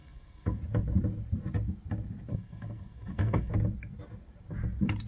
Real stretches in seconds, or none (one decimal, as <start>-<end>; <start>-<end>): 0.6-2.3; 3.5-5.1